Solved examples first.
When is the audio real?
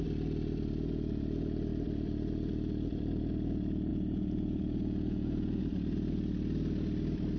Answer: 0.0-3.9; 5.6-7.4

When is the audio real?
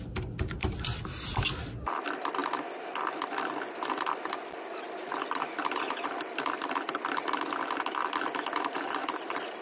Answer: 0.0-9.6